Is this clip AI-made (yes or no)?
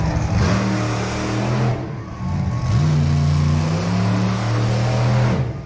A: no